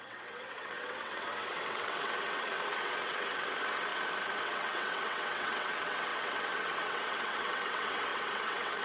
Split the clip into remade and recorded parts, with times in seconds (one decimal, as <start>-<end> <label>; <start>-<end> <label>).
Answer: 0.0-3.9 remade; 3.9-4.4 recorded; 4.4-8.8 remade